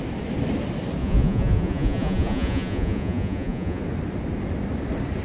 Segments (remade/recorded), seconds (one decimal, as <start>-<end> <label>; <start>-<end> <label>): 0.0-1.0 recorded; 1.0-3.8 remade; 3.8-5.2 recorded